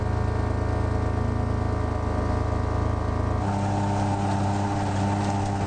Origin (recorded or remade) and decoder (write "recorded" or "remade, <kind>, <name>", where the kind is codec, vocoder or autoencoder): recorded